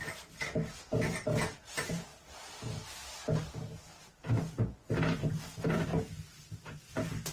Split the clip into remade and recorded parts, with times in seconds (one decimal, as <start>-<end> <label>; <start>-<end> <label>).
0.0-7.3 recorded